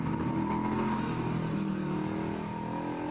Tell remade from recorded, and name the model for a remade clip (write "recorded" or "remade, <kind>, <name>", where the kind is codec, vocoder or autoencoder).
recorded